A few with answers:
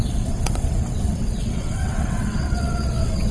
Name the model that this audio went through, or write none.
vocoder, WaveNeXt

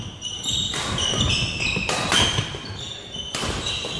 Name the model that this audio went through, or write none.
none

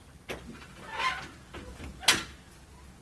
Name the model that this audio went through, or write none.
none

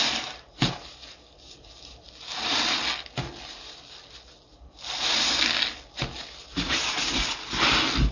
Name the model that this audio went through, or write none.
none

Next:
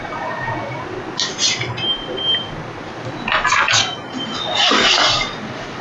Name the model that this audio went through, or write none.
none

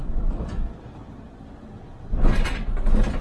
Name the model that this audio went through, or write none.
none